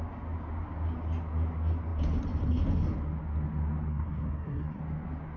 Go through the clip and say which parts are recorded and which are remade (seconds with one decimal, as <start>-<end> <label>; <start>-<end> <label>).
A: 0.0-3.9 recorded; 3.9-4.8 remade; 4.8-5.4 recorded